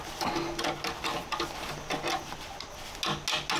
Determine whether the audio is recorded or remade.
recorded